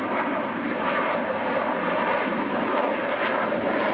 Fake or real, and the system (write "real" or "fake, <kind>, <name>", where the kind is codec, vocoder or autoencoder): real